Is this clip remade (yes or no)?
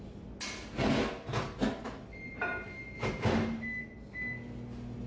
no